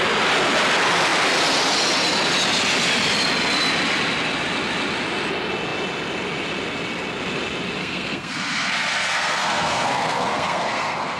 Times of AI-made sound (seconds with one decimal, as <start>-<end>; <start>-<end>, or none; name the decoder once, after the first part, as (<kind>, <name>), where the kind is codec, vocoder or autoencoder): 7.8-11.2 (codec, SNAC)